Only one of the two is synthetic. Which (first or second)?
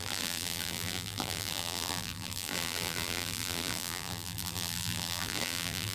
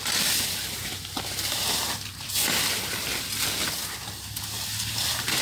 first